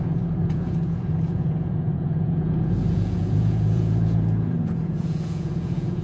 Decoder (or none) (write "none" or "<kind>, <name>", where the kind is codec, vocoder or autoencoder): vocoder, Vocos